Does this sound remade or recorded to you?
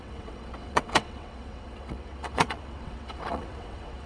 remade